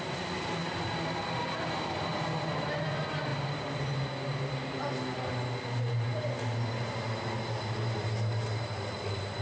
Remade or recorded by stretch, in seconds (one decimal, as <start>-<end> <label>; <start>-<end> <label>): 0.0-9.4 recorded